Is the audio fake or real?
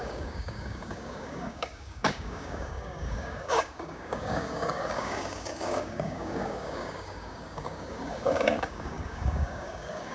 fake